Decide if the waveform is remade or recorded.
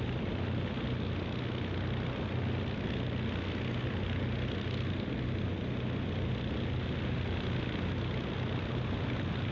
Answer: recorded